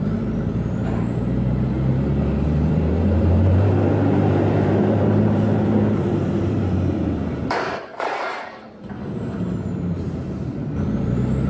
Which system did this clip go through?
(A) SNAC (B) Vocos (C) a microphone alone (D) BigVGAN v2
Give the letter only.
D